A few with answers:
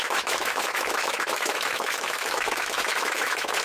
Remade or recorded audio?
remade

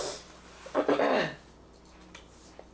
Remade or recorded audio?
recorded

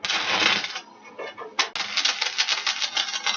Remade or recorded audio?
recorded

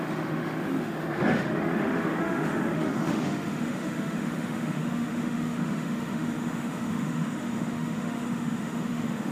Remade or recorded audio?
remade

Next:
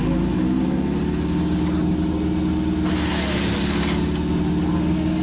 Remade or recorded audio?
recorded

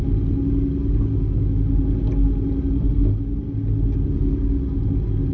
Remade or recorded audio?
recorded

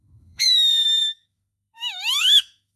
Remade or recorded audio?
remade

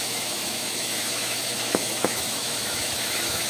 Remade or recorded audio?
remade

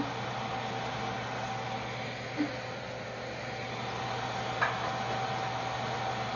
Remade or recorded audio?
recorded